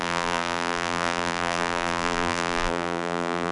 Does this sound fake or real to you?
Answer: fake